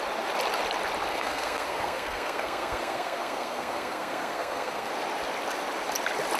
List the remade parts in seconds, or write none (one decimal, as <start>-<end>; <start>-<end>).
1.1-4.9